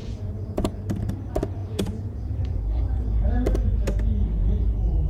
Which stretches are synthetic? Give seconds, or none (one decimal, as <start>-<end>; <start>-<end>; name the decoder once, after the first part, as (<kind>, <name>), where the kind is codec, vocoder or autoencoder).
0.0-0.8 (vocoder, Vocos); 1.6-3.3; 4.4-5.1